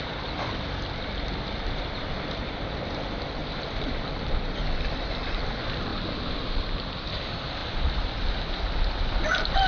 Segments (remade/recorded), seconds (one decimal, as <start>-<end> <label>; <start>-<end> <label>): 0.0-9.7 remade

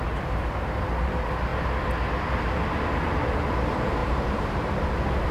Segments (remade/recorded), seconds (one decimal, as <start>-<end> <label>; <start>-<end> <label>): 0.0-4.0 recorded; 4.0-4.8 remade; 4.8-5.3 recorded

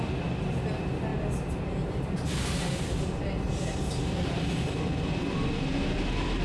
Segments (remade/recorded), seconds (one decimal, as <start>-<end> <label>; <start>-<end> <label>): 0.0-6.4 recorded

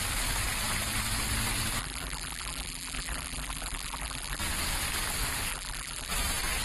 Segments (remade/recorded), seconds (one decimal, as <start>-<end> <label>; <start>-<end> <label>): 0.0-1.8 recorded; 1.8-4.4 remade; 4.4-5.5 recorded; 5.5-6.1 remade; 6.1-6.6 recorded

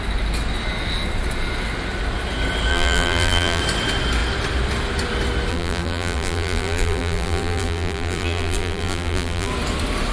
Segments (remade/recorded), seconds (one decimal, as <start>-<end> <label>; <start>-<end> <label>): 0.0-2.7 recorded; 2.7-3.6 remade; 3.6-5.5 recorded; 5.5-9.5 remade; 9.5-10.1 recorded